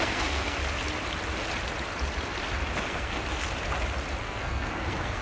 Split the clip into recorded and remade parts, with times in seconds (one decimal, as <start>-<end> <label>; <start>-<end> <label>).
0.0-0.6 remade; 0.6-2.8 recorded; 2.8-3.2 remade; 3.2-4.2 recorded; 4.2-5.2 remade